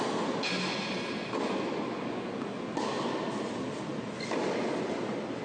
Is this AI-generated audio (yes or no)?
no